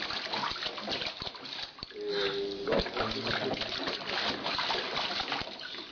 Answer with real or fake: real